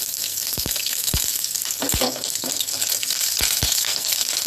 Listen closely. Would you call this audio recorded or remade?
remade